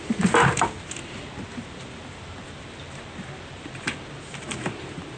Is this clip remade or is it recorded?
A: recorded